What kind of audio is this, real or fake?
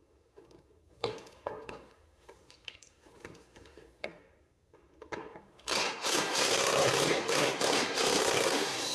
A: fake